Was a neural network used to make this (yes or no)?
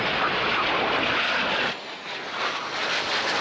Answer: no